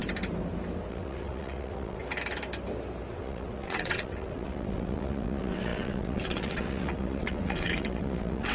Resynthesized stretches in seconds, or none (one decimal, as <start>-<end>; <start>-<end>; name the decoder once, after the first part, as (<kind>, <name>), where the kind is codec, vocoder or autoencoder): 0.9-2.0 (vocoder, WaveNeXt); 3.1-8.5